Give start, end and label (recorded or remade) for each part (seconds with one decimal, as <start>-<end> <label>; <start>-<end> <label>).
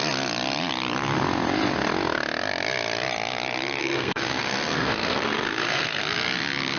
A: 0.0-3.8 recorded; 3.8-6.0 remade; 6.0-6.8 recorded